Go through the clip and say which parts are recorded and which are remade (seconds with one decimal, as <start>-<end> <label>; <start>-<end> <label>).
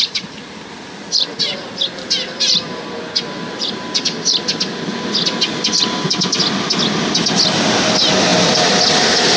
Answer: 0.0-9.4 recorded